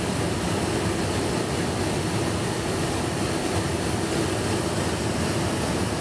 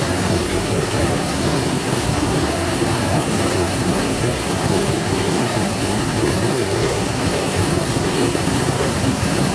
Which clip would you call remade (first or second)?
second